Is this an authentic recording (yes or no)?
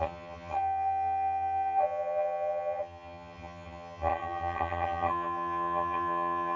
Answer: no